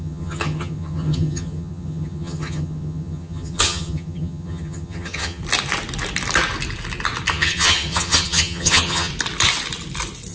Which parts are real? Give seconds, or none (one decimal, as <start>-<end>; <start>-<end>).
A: 5.4-7.3; 9.1-10.3